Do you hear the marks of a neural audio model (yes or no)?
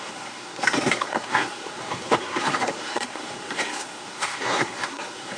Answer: yes